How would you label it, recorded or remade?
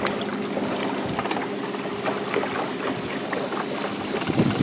recorded